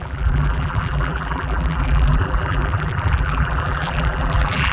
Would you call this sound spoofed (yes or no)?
yes